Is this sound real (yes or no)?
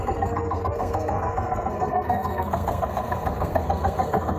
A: no